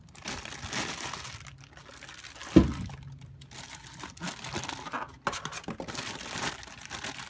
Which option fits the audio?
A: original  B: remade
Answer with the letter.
A